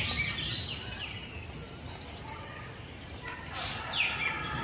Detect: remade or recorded recorded